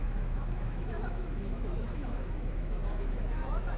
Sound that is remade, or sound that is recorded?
remade